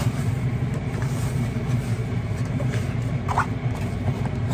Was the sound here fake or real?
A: fake